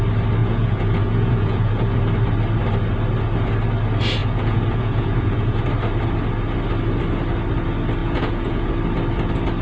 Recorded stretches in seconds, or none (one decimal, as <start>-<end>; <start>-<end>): 0.0-0.4; 2.0-4.2; 5.6-8.0; 8.7-9.6